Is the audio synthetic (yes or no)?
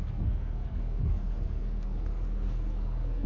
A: yes